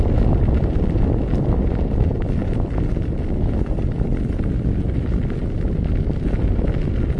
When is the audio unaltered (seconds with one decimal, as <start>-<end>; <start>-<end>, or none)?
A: 0.0-7.2